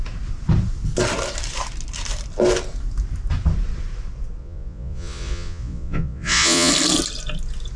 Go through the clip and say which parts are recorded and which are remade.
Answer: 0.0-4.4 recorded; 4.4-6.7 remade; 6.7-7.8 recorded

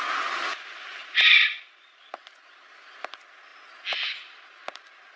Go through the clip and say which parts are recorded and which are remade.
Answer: 0.0-1.0 recorded; 1.0-2.1 remade; 2.1-3.5 recorded; 3.5-5.2 remade

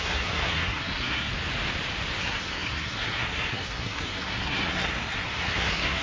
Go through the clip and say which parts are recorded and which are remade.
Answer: 0.0-1.3 remade; 1.3-2.2 recorded; 2.2-6.0 remade

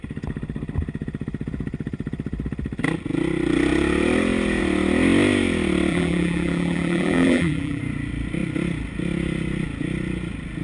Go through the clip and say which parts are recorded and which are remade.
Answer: 0.0-5.9 recorded; 5.9-7.8 remade; 7.8-10.6 recorded

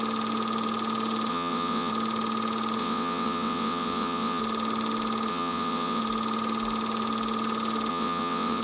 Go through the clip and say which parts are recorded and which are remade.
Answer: 0.0-1.3 recorded; 1.3-1.9 remade; 1.9-2.8 recorded; 2.8-4.4 remade; 4.4-5.3 recorded; 5.3-6.0 remade; 6.0-7.9 recorded; 7.9-8.6 remade